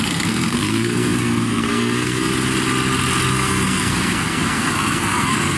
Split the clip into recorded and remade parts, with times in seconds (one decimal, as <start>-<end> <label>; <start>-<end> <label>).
0.0-2.3 remade; 2.3-3.3 recorded; 3.3-5.6 remade